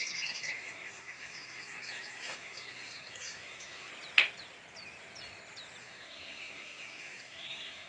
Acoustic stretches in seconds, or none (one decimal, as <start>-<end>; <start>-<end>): 3.9-5.8